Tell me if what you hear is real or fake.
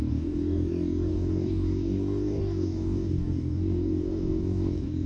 fake